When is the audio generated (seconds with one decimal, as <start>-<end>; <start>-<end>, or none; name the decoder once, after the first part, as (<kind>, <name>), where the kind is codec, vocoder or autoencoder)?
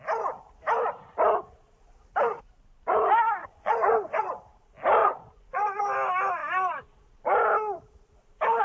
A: 3.4-4.3 (vocoder, Vocos); 5.0-5.8